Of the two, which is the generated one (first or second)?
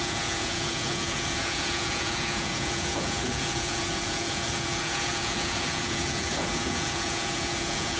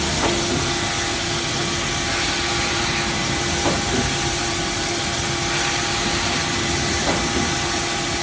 first